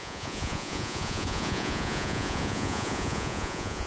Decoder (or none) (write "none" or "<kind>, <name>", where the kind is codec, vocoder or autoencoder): vocoder, Vocos